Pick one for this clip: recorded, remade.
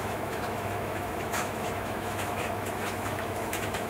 remade